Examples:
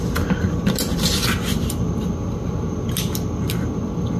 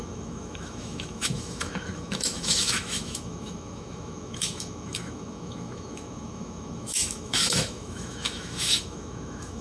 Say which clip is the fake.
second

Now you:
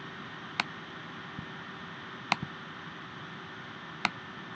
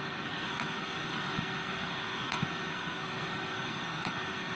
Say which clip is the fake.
second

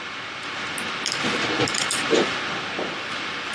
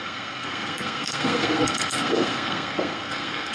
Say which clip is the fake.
second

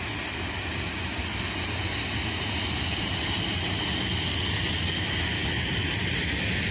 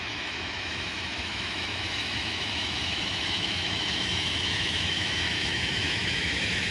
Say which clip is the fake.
second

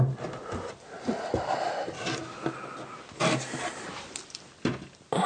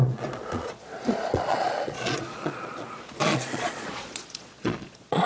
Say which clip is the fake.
second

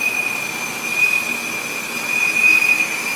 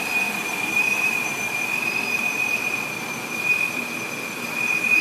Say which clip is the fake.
second